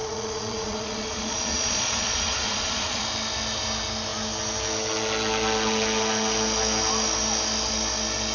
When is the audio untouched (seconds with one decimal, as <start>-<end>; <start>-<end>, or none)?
3.0-8.3

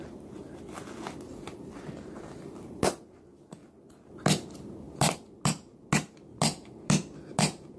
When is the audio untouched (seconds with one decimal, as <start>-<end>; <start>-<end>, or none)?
0.0-7.8

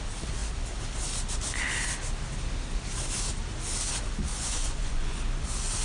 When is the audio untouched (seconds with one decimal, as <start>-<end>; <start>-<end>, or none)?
0.0-4.3; 5.2-5.8

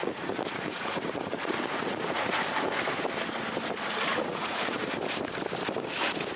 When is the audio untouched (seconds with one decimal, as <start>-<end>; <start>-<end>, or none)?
2.4-4.1; 4.9-6.4